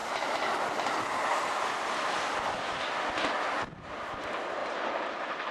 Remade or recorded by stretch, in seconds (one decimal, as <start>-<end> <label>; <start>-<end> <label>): 0.0-4.6 recorded; 4.6-5.5 remade